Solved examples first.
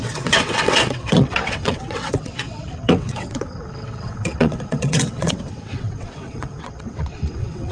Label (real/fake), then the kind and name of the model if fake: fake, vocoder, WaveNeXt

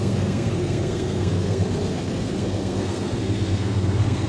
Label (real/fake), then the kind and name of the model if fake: fake, codec, SNAC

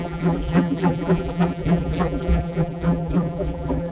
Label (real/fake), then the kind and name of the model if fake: fake, vocoder, BigVGAN v2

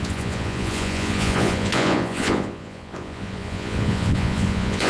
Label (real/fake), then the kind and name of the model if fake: fake, vocoder, Vocos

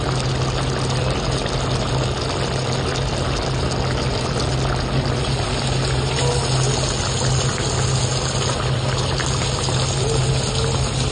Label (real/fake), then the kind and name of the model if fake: real